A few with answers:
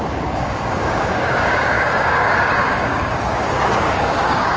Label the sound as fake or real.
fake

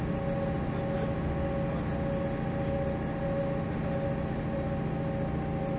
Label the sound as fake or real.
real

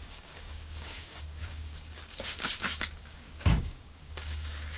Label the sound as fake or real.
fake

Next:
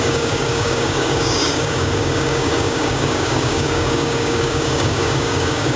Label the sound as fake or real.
fake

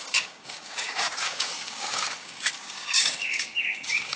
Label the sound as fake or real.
fake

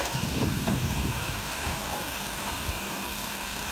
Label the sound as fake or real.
fake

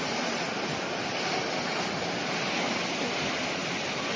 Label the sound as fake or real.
real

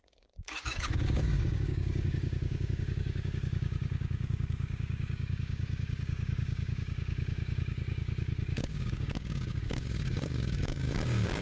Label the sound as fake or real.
fake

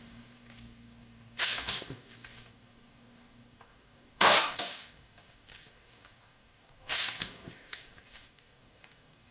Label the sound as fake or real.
fake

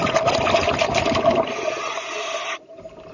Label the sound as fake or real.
real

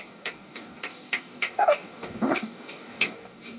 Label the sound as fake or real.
fake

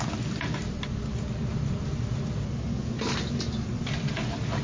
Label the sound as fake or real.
real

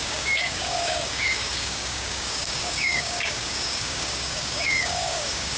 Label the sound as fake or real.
fake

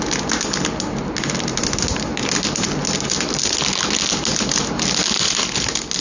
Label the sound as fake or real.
real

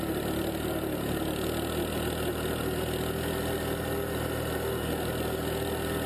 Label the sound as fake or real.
real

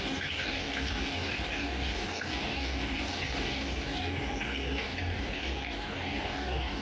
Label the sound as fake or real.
fake